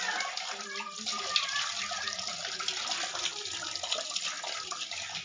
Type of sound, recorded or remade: recorded